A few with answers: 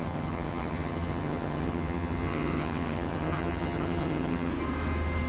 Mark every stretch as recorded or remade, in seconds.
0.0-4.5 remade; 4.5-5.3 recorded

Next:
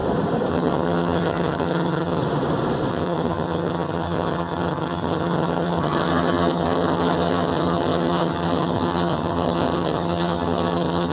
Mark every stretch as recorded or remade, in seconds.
0.0-0.5 recorded; 0.5-2.2 remade; 2.2-2.9 recorded; 2.9-11.1 remade

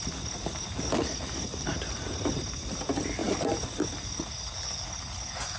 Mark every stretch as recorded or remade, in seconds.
0.0-5.6 recorded